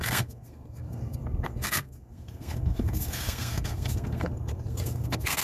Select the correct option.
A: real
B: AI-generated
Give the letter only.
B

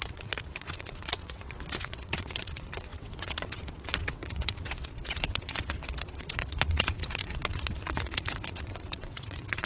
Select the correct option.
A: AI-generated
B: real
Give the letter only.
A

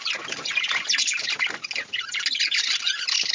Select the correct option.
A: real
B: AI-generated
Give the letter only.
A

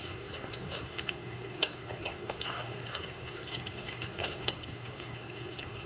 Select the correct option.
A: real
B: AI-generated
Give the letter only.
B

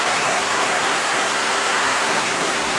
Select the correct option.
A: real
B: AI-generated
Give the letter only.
B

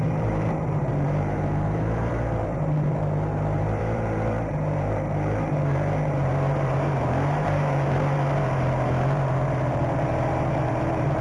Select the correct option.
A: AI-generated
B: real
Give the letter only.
A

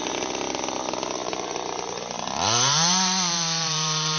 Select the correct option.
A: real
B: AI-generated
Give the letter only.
B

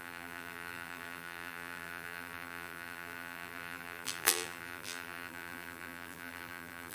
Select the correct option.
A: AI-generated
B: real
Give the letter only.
A